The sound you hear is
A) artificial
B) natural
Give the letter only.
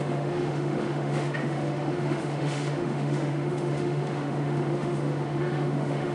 A